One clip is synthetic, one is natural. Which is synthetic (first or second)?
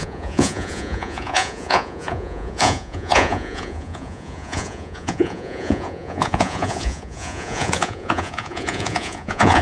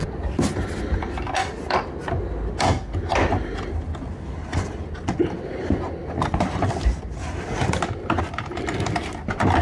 first